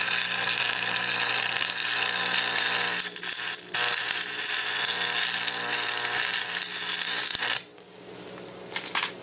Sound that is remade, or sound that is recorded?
recorded